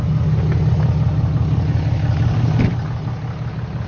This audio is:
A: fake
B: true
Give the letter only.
B